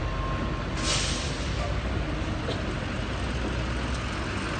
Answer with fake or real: real